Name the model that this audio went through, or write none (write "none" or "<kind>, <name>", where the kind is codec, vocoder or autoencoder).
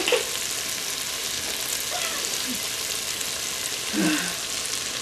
none